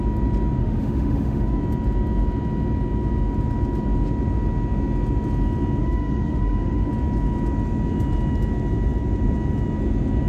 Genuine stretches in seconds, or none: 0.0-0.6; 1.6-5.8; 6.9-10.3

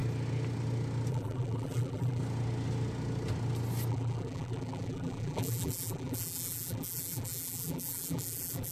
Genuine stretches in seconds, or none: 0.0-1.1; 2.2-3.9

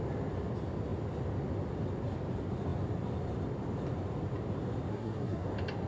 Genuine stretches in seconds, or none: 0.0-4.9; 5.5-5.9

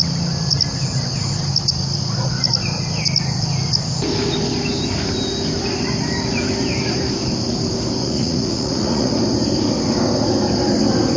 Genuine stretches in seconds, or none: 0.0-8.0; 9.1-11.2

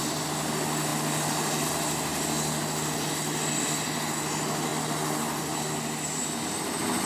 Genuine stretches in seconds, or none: 0.0-7.1

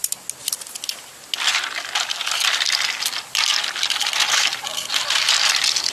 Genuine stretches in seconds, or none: 0.0-5.9

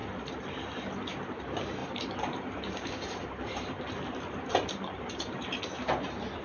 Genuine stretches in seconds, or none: 0.9-1.8; 5.6-6.4

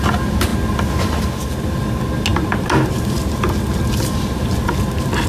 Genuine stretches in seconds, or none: 0.0-5.3